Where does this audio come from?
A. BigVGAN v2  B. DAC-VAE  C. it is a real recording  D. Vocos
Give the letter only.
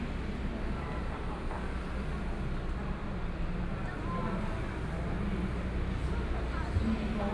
C